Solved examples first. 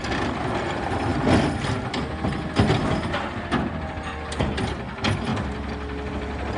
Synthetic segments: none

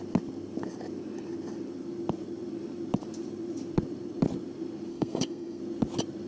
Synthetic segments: 4.9-5.6 (codec, SNAC)

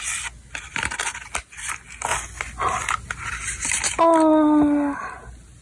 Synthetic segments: 0.7-1.6 (vocoder, BigVGAN v2)

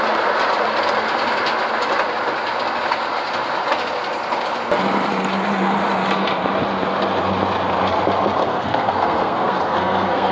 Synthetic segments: 8.4-10.3 (codec, SNAC)

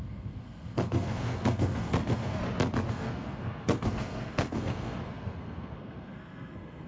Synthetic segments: 0.0-2.4 (codec, SNAC); 2.9-6.9

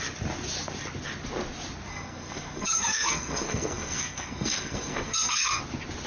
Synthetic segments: 1.9-5.6 (codec, SNAC)

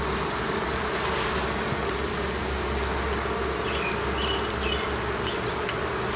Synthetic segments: none

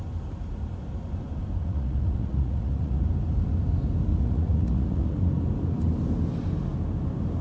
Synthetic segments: 1.6-3.0 (vocoder, Vocos); 4.1-5.2